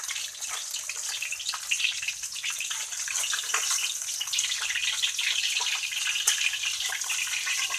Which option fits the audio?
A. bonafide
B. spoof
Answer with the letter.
A